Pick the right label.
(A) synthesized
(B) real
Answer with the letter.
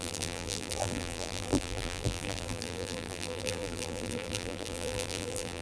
A